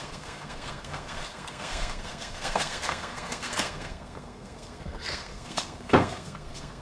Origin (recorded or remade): remade